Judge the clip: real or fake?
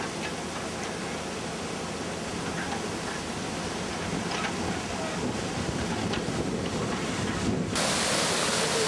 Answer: real